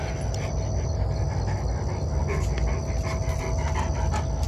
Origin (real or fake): real